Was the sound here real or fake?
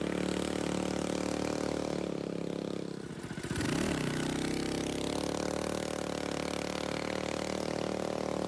real